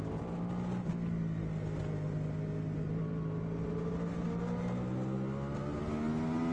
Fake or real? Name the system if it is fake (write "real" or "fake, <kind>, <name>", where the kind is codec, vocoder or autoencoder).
real